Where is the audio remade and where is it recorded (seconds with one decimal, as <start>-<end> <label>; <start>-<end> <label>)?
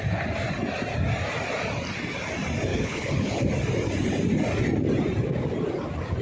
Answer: 0.0-2.7 recorded; 2.7-3.4 remade; 3.4-6.2 recorded